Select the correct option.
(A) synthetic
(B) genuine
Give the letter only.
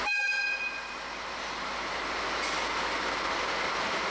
B